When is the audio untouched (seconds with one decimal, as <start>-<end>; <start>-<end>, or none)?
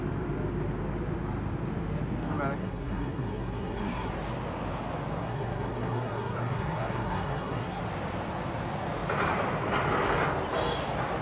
0.0-2.6; 4.1-5.2; 7.8-11.2